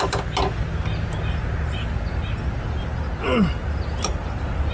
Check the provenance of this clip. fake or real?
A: real